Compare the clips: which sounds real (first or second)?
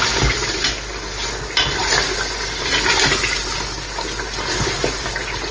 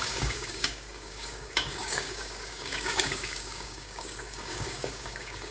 first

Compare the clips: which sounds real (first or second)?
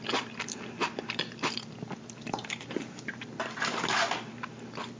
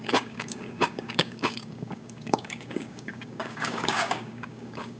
first